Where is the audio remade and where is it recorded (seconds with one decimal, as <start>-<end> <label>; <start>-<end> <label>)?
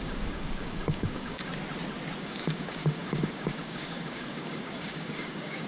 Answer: 0.0-1.5 remade; 1.5-2.2 recorded; 2.2-5.7 remade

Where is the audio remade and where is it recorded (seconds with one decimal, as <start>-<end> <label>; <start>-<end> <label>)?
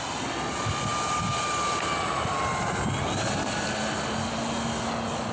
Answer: 0.0-5.3 recorded